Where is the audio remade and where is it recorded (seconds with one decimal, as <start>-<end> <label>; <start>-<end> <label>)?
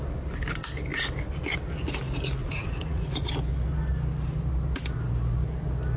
0.0-2.4 recorded; 2.4-3.3 remade; 3.3-6.0 recorded